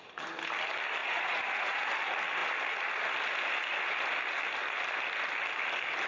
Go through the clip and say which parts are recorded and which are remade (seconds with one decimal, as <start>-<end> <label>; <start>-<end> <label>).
0.0-1.0 recorded; 1.0-1.9 remade; 1.9-6.1 recorded

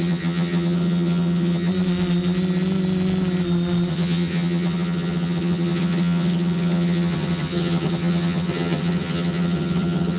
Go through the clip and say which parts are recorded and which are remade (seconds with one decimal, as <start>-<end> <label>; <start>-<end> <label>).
0.0-1.7 remade; 1.7-3.9 recorded; 3.9-10.2 remade

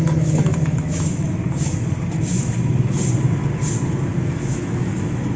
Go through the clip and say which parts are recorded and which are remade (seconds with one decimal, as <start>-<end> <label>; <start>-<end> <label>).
0.0-1.1 remade; 1.1-4.3 recorded; 4.3-5.4 remade

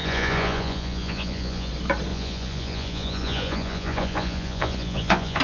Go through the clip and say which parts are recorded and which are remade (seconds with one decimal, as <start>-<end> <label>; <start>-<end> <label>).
0.0-1.7 remade; 1.7-2.1 recorded; 2.1-5.4 remade

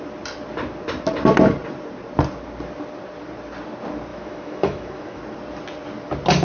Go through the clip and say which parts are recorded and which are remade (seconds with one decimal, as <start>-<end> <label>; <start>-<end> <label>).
0.0-4.1 recorded; 4.1-5.2 remade; 5.2-6.4 recorded

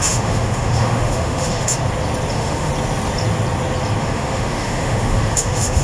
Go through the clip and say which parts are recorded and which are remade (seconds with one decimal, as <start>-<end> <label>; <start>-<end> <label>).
0.0-1.8 remade; 1.8-2.3 recorded; 2.3-2.7 remade; 2.7-4.0 recorded; 4.0-5.8 remade

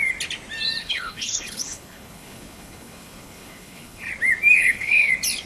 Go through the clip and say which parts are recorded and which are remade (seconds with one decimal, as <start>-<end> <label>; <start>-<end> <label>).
0.0-0.8 recorded; 0.8-4.1 remade; 4.1-4.6 recorded; 4.6-5.1 remade; 5.1-5.5 recorded